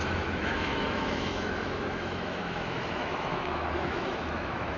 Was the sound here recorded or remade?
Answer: remade